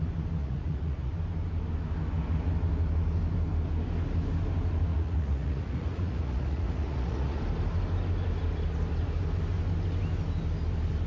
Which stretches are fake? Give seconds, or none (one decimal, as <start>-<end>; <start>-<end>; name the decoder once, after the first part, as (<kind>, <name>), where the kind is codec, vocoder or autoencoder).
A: 0.4-1.1 (vocoder, Vocos); 4.9-7.4